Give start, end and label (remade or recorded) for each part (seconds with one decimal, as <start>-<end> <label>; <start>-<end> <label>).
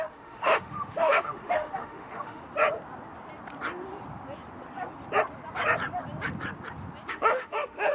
0.0-2.4 remade; 2.4-7.1 recorded; 7.1-7.9 remade